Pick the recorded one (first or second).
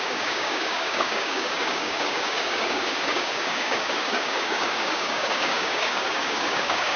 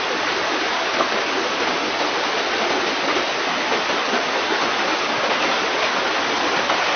second